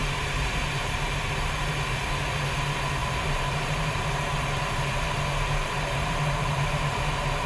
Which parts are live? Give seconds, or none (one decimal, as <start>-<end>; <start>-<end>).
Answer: 1.7-3.0; 7.0-7.5